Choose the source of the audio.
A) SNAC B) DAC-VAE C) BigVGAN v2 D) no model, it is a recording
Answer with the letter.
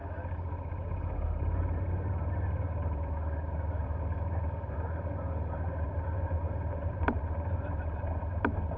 C